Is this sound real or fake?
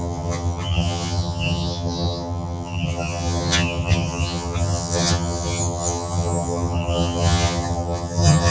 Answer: fake